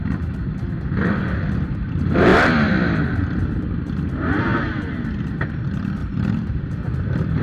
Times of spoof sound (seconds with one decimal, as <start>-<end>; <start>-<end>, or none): 2.3-3.0; 6.0-7.4